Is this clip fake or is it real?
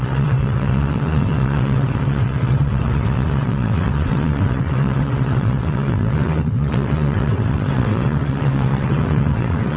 fake